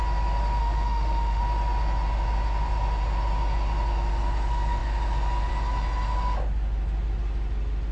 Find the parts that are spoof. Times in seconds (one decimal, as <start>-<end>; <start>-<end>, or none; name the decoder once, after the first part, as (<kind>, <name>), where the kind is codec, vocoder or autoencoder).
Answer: 0.6-1.4 (autoencoder, DAC-VAE)

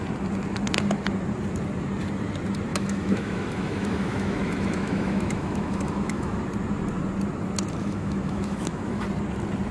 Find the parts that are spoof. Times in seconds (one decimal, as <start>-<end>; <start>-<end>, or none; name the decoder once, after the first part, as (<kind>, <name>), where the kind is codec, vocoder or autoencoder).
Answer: 2.7-6.4 (autoencoder, DAC-VAE); 7.8-9.0

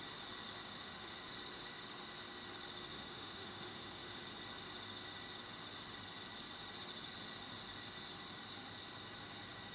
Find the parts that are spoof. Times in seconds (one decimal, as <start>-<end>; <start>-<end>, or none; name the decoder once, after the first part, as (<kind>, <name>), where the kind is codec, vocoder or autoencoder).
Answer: 0.7-1.3 (autoencoder, DAC-VAE); 2.9-4.2

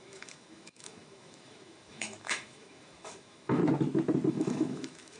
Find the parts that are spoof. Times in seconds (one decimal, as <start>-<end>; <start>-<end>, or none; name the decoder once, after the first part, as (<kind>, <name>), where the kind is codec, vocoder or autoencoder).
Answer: 0.0-3.6 (autoencoder, DAC-VAE); 4.3-5.2

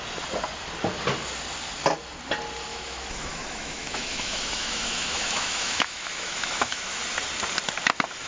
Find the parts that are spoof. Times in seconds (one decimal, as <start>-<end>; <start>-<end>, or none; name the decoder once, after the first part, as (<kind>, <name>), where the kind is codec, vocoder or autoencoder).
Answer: 2.7-7.0 (autoencoder, DAC-VAE)

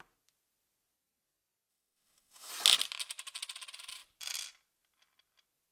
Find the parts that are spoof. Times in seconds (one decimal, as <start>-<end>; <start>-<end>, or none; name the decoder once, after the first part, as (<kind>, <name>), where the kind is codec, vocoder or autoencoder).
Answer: 1.7-2.5 (autoencoder, DAC-VAE)

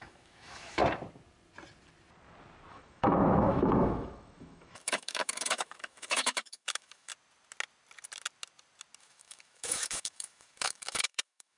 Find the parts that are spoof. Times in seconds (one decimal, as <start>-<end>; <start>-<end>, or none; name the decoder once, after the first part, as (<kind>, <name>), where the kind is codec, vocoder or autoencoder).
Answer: 0.0-0.8 (autoencoder, DAC-VAE); 2.7-7.1; 9.0-11.6

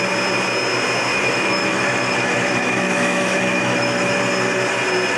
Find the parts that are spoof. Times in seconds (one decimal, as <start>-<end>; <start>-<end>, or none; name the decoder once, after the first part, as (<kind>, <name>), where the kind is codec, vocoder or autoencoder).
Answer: 1.1-4.2 (autoencoder, DAC-VAE)